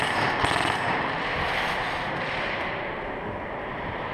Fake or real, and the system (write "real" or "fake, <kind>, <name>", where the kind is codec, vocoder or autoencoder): real